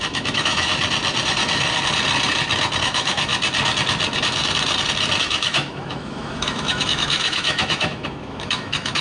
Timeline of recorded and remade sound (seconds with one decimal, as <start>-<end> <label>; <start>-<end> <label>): 0.0-0.7 remade; 0.7-2.8 recorded; 2.8-3.3 remade; 3.3-5.2 recorded; 5.2-9.0 remade